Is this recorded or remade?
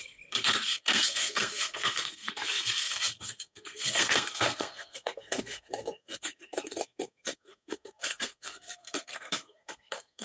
remade